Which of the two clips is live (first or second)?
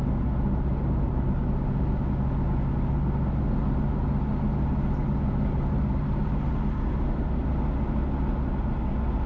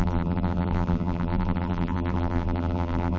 first